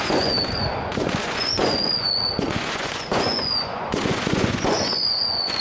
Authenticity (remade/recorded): remade